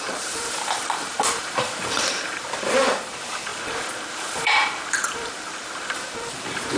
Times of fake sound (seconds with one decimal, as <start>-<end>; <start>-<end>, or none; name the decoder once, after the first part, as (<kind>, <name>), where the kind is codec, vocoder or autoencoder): 0.0-6.8 (vocoder, BigVGAN v2)